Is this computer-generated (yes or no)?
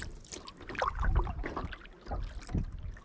no